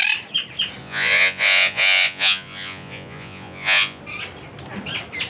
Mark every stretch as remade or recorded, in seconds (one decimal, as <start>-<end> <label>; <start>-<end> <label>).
0.0-0.8 recorded; 0.8-4.0 remade; 4.0-5.3 recorded